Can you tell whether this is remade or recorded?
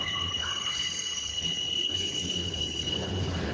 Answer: remade